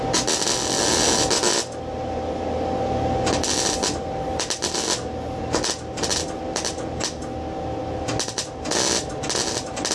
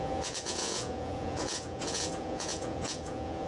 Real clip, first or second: first